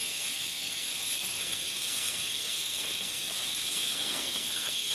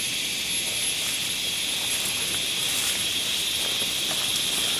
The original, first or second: second